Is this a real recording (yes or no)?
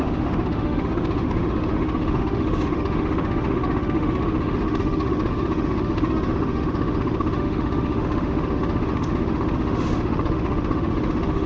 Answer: no